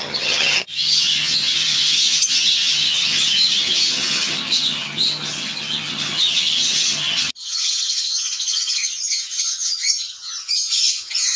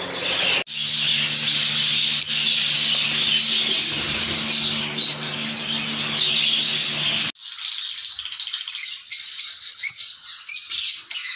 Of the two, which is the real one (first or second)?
second